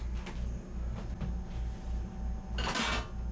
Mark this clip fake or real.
real